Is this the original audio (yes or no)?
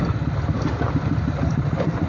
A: yes